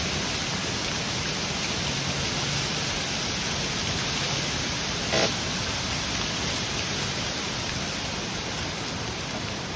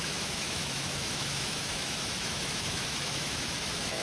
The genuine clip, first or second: first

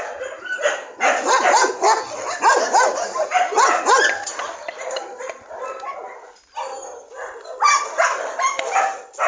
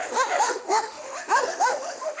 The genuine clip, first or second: first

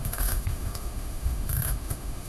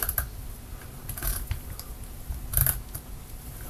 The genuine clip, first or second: second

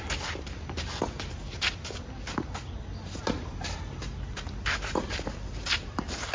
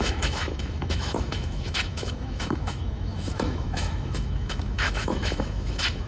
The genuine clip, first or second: first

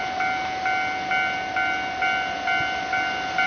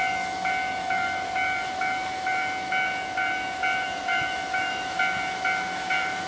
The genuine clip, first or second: first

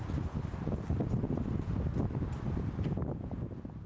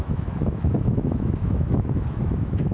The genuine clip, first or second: first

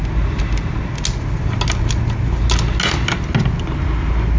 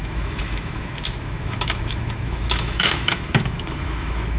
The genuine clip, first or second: first